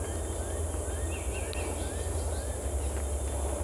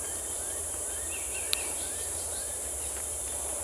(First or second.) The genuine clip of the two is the first